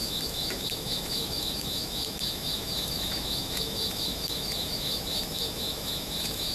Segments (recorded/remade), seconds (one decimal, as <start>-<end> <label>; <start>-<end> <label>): 0.0-6.5 remade